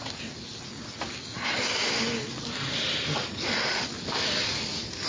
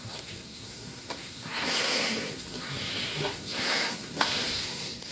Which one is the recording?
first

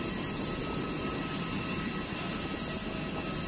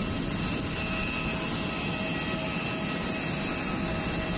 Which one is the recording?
second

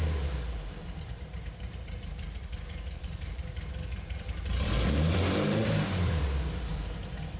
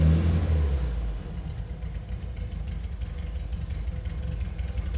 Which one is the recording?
second